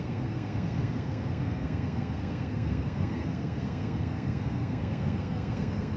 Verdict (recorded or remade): remade